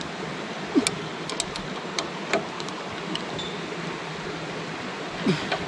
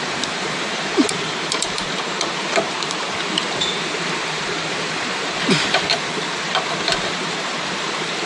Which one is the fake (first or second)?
second